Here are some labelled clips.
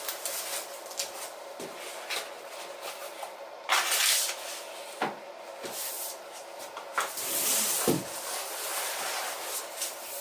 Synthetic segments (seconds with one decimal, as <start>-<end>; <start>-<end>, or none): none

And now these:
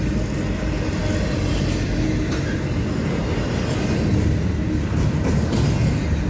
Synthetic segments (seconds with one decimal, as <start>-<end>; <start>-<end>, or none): none

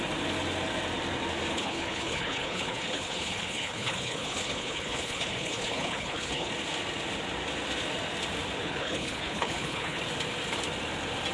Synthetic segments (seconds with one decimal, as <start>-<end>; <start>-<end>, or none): 1.5-6.5; 8.6-10.0

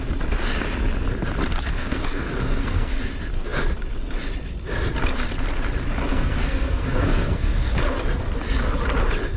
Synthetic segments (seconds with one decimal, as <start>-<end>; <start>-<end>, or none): 1.5-3.0; 6.1-7.8

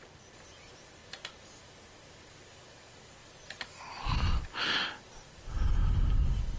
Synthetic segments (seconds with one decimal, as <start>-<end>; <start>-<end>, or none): 1.0-1.6; 3.2-3.8; 5.8-6.6

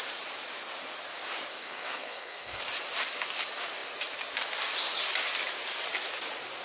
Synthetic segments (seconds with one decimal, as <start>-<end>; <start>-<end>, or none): 1.5-2.6

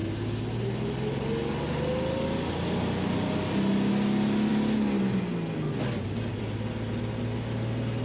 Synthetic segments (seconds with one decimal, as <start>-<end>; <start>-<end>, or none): none